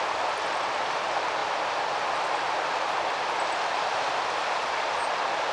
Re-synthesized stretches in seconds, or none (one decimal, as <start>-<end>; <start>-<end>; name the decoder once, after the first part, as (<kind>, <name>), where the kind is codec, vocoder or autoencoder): none